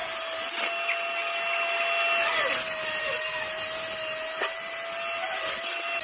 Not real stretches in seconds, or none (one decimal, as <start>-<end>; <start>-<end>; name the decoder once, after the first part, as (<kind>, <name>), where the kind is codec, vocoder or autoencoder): none